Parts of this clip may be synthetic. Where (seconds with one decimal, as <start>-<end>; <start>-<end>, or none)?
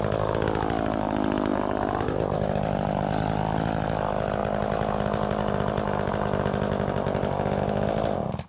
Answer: 1.5-2.6